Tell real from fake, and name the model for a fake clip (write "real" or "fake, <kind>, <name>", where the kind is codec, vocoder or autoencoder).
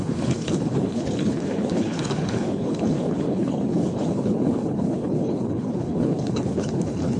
fake, codec, HILCodec